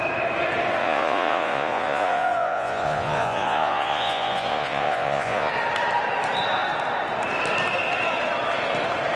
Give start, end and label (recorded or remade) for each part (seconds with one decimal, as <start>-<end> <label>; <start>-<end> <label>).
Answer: 0.0-0.8 recorded; 0.8-5.5 remade; 5.5-9.2 recorded